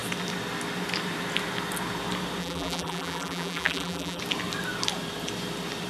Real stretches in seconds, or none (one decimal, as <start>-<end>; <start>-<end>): 0.0-2.4; 4.2-5.9